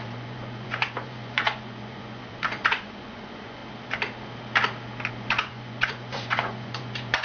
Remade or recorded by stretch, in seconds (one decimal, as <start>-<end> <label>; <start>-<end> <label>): 0.0-3.6 remade; 3.6-5.1 recorded; 5.1-7.2 remade